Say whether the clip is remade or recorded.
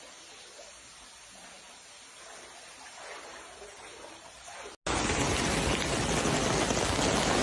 recorded